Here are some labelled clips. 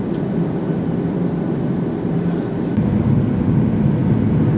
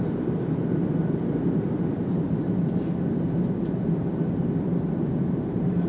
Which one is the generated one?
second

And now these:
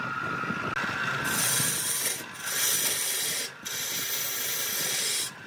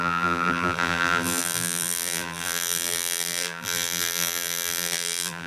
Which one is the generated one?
second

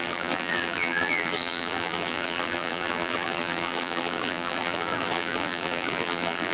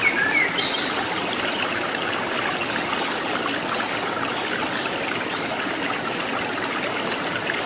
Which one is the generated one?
first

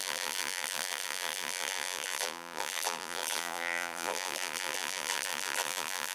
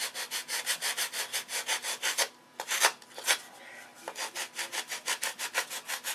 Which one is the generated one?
first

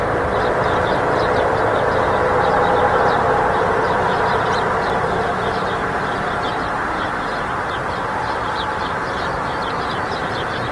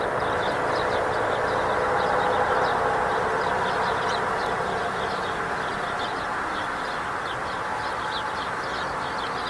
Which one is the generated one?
first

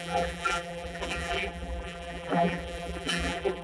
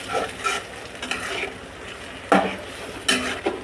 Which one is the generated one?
first